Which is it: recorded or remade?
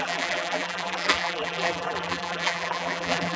remade